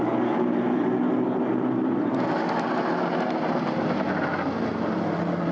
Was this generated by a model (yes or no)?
no